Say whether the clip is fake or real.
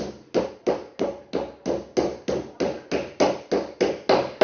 real